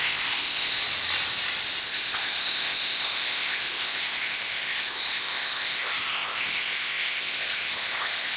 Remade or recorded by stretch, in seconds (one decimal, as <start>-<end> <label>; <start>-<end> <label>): 0.0-0.8 remade; 0.8-1.8 recorded; 1.8-8.4 remade